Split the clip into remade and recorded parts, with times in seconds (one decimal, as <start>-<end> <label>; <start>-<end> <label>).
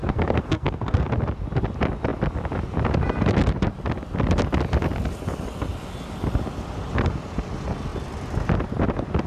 0.0-1.1 remade; 1.1-9.3 recorded